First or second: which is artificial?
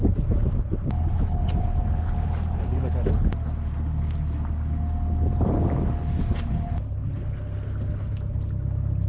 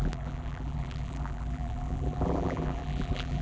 second